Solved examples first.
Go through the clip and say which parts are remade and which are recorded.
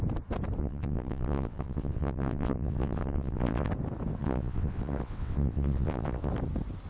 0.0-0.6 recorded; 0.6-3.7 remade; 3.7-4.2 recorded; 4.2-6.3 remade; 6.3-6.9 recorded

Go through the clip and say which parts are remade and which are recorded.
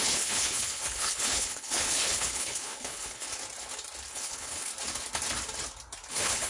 0.0-3.3 remade; 3.3-4.1 recorded; 4.1-4.7 remade; 4.7-6.1 recorded; 6.1-6.5 remade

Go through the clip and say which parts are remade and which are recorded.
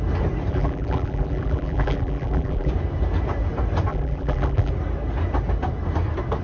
0.0-0.5 recorded; 0.5-2.7 remade; 2.7-3.9 recorded; 3.9-4.7 remade; 4.7-6.4 recorded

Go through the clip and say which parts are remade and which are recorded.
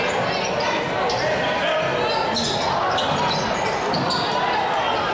0.0-5.1 recorded